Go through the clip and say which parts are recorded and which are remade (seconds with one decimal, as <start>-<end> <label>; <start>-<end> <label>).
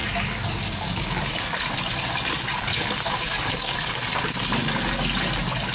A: 0.0-1.3 remade; 1.3-2.7 recorded; 2.7-3.9 remade; 3.9-5.7 recorded